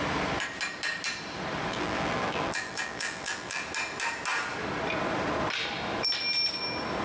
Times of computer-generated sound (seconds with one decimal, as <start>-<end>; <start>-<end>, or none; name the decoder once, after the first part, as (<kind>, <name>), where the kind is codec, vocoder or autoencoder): 1.7-3.6 (vocoder, BigVGAN v2)